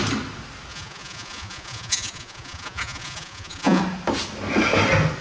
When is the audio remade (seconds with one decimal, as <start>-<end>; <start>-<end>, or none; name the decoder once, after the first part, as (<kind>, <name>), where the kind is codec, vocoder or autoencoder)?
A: 0.7-3.8 (vocoder, Vocos)